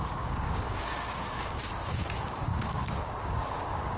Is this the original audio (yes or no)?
no